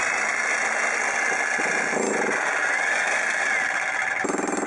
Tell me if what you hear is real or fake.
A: real